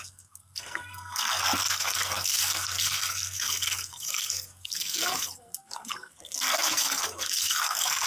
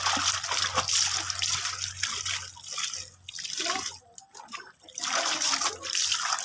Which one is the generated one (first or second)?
first